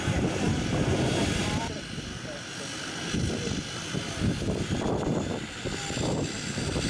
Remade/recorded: remade